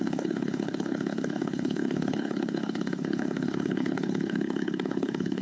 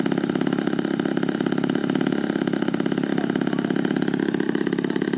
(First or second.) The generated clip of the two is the first